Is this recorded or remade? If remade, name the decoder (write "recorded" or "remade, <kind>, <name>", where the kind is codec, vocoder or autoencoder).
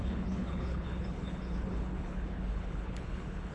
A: remade, codec, HILCodec